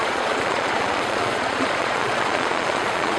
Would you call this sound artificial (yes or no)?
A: yes